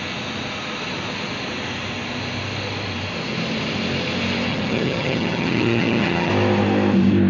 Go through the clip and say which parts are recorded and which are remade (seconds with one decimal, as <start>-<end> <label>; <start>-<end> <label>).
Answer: 0.0-4.5 recorded; 4.5-6.3 remade; 6.3-7.3 recorded